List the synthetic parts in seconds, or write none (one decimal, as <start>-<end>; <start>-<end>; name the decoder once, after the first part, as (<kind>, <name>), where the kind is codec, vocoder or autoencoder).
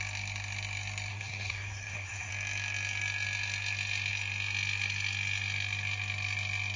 1.1-2.3 (codec, SNAC)